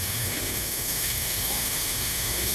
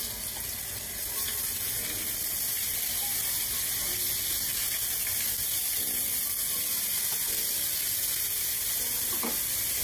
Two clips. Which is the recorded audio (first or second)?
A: second